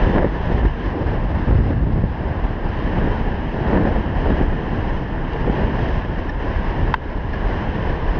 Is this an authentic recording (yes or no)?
yes